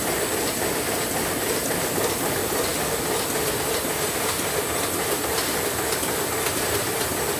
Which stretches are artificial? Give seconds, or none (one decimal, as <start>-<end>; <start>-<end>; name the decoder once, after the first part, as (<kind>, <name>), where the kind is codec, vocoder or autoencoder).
none